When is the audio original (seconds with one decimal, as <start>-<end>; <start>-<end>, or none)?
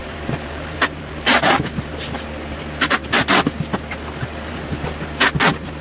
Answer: 1.9-5.8